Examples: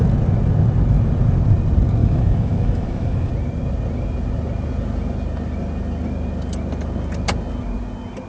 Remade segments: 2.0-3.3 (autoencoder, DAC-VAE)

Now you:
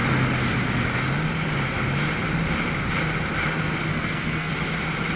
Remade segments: 3.9-4.5 (codec, SNAC)

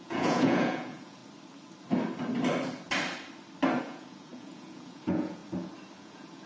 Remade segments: 0.0-1.2 (vocoder, Vocos); 3.8-5.4; 6.0-6.5

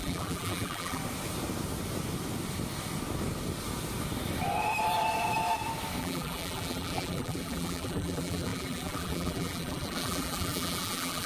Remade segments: 0.0-1.0 (vocoder, BigVGAN v2); 6.0-11.3

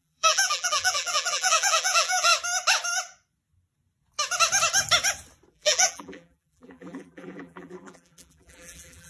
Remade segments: 0.0-2.3 (vocoder, BigVGAN v2); 5.5-9.1

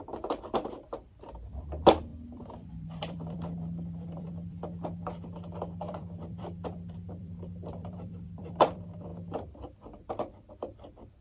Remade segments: 0.0-9.1 (vocoder, BigVGAN v2); 10.5-11.2

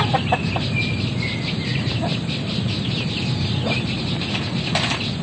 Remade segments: none